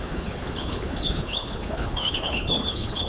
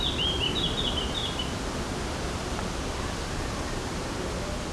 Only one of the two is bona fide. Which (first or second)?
second